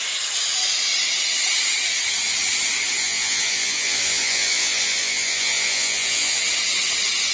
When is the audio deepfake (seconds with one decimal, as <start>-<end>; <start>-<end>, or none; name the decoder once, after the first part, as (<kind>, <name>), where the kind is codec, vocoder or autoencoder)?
3.0-6.4 (vocoder, Vocos)